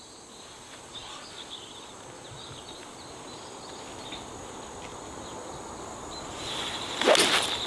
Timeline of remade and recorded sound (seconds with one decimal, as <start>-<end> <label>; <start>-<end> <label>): 0.0-7.7 recorded